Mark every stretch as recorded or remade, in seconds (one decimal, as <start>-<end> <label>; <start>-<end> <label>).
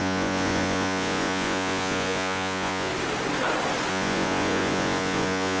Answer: 0.0-2.9 remade; 2.9-3.9 recorded; 3.9-5.6 remade